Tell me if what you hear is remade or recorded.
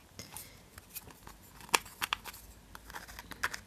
recorded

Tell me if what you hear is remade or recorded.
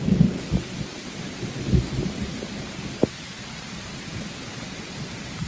recorded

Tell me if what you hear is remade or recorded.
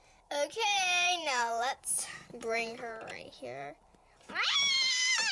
remade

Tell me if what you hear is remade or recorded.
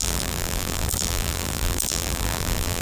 remade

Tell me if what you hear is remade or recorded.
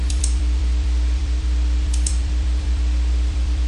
remade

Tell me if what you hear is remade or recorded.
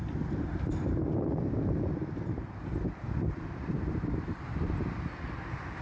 remade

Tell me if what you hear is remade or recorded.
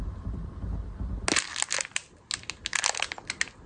recorded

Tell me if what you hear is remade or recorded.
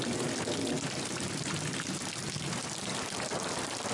recorded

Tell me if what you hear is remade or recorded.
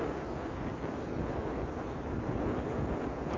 recorded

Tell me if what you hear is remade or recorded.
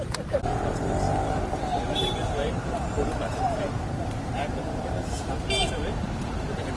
remade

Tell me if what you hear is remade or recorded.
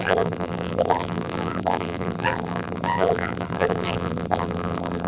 remade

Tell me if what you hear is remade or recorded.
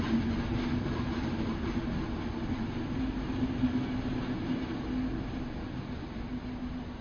recorded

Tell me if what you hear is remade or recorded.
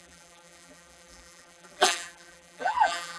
remade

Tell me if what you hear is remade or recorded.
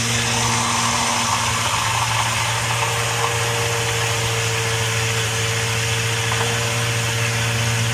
recorded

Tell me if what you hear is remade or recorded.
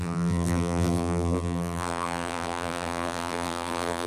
remade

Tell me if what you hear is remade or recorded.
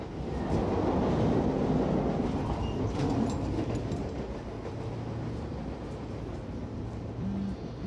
recorded